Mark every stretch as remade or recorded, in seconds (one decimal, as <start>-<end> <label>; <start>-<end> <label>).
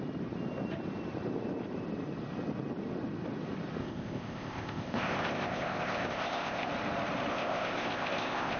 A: 0.0-3.8 recorded; 3.8-6.7 remade; 6.7-7.3 recorded; 7.3-8.6 remade